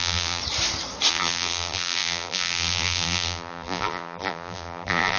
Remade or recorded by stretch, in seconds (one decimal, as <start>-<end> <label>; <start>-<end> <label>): 0.0-0.4 remade; 0.4-1.1 recorded; 1.1-5.2 remade